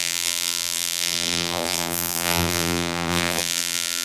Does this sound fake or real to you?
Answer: fake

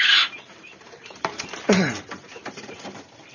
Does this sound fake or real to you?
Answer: fake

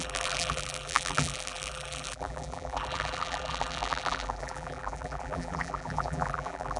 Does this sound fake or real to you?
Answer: fake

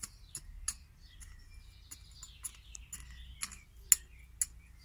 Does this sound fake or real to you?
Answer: real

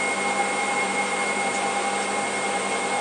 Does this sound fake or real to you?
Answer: fake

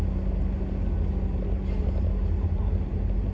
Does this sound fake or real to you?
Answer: real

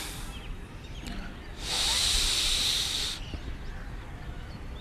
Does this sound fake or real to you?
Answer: fake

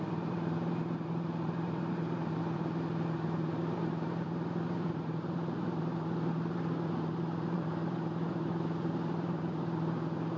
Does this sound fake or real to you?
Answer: fake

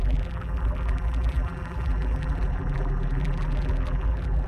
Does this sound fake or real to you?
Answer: fake